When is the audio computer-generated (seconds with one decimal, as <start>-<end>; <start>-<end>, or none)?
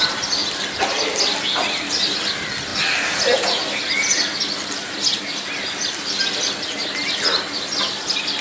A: none